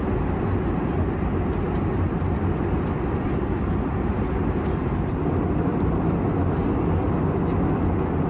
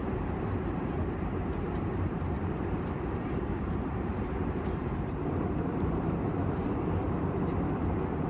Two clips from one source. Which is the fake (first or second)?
second